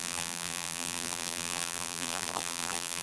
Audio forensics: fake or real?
fake